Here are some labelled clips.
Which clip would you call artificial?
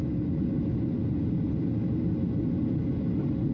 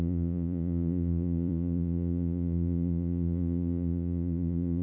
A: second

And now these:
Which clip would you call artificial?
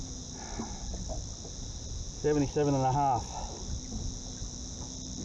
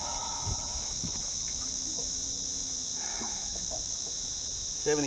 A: second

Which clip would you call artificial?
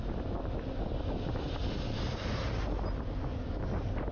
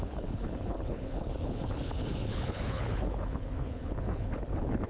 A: second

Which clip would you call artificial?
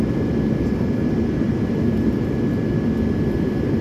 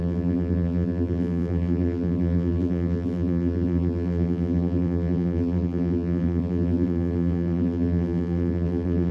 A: second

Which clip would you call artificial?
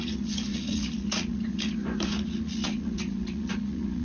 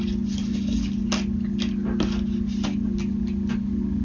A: first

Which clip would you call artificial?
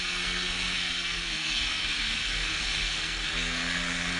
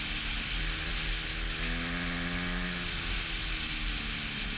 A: first